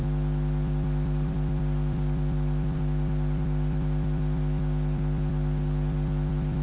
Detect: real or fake fake